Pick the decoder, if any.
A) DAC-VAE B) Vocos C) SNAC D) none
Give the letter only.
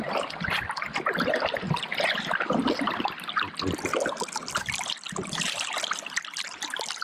D